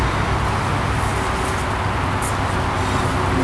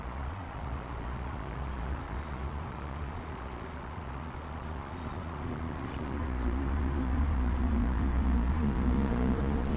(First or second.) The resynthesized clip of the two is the second